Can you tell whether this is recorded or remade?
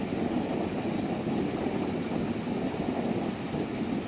recorded